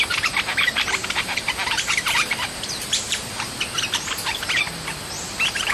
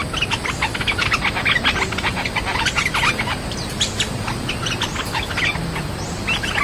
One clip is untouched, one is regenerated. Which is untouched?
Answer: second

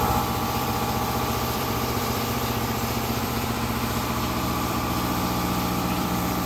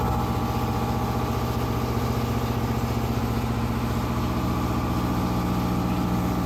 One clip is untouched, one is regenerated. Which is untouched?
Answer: second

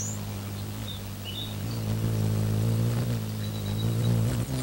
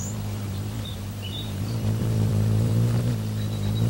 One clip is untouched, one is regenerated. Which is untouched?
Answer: first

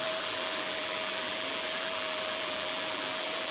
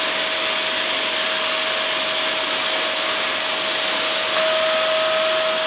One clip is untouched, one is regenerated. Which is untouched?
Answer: second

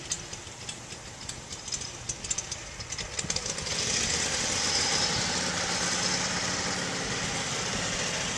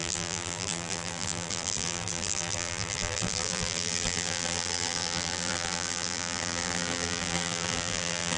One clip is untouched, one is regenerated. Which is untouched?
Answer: first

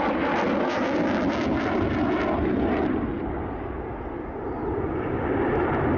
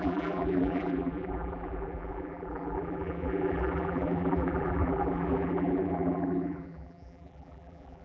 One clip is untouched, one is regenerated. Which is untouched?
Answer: first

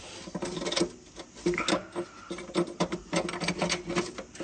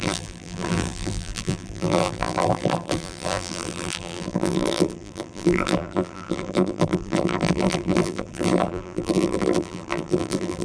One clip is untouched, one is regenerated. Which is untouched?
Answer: first